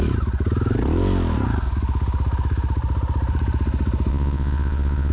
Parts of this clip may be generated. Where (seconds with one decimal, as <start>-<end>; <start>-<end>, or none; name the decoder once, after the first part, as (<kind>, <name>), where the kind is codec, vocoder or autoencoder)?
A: 4.1-5.1 (vocoder, Vocos)